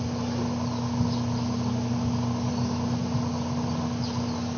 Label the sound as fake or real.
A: real